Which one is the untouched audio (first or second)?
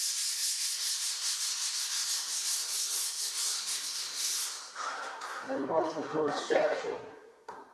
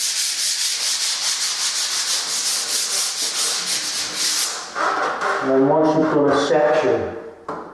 second